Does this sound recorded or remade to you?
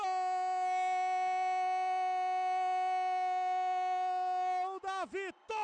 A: recorded